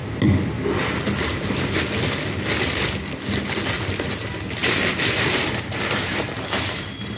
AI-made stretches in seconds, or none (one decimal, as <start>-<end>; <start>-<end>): 4.6-6.2